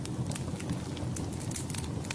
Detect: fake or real real